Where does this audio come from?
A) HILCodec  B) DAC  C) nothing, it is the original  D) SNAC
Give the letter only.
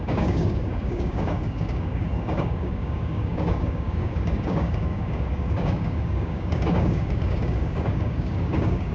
B